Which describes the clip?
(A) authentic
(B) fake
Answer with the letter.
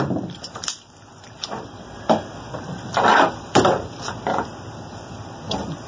A